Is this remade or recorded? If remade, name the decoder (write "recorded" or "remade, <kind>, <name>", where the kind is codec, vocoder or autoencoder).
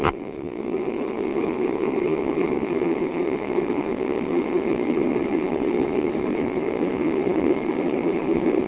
remade, vocoder, Vocos